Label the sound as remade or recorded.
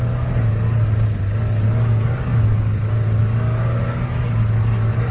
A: recorded